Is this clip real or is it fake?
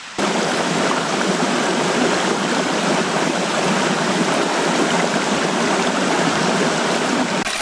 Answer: real